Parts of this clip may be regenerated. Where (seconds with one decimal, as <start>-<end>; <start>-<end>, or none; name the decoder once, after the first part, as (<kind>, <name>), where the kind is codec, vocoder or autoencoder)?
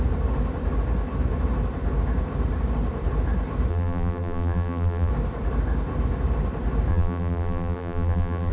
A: 3.7-5.1 (vocoder, BigVGAN v2); 6.9-8.5